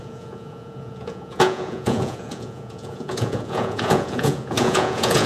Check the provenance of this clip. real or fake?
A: fake